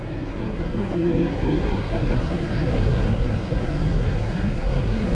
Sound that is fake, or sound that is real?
fake